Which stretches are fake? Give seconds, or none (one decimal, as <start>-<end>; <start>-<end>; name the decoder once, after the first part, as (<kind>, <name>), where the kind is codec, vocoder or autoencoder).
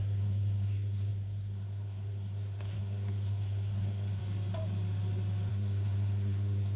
0.0-4.2 (codec, SNAC); 5.5-6.8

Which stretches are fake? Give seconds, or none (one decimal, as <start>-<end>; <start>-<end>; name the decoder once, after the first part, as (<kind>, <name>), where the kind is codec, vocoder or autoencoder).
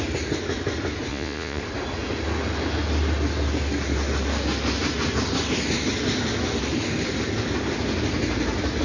1.1-1.6 (vocoder, Vocos)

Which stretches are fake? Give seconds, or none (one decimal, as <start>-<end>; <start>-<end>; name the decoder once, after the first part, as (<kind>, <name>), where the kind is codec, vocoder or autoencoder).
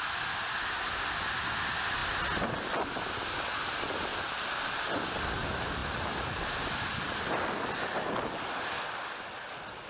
4.1-4.9 (vocoder, BigVGAN v2)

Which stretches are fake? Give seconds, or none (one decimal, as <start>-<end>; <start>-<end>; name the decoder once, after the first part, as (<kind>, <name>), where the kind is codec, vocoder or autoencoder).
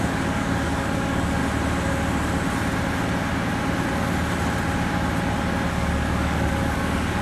0.0-1.4 (codec, DAC); 5.7-7.2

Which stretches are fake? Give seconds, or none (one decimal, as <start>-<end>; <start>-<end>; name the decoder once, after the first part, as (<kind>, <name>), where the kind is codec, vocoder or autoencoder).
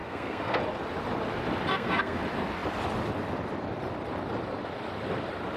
0.0-0.6 (codec, SNAC); 1.7-2.2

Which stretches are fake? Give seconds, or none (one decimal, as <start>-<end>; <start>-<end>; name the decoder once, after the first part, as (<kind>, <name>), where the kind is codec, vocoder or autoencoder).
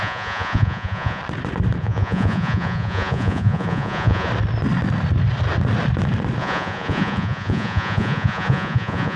0.0-1.2 (vocoder, Vocos); 1.8-4.3; 6.4-9.2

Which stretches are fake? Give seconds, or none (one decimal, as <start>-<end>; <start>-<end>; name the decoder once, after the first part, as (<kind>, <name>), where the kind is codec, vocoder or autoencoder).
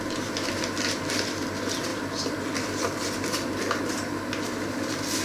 none